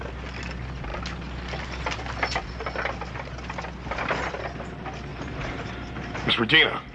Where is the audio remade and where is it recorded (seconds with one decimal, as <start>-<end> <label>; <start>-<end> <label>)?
0.0-5.1 recorded; 5.1-6.3 remade; 6.3-6.9 recorded